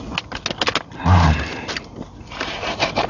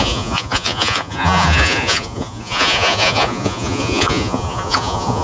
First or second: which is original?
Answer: first